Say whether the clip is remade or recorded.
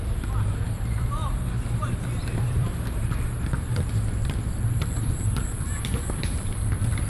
remade